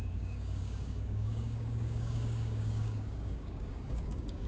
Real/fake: fake